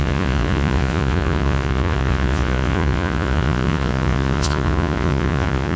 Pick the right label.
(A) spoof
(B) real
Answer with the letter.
A